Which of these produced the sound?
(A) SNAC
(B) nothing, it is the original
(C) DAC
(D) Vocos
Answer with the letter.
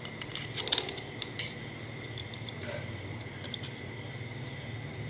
B